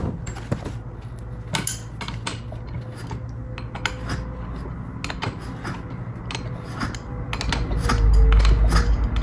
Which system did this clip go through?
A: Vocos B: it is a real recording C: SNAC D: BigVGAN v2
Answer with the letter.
B